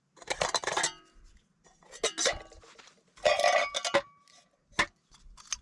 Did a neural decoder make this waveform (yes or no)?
no